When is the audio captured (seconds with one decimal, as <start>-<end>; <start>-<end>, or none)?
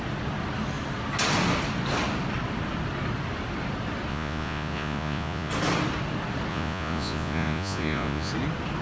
0.0-4.1; 5.5-6.5; 8.3-8.8